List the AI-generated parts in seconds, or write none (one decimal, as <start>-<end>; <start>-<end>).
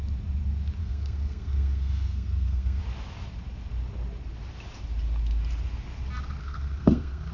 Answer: 0.8-2.8; 6.4-7.3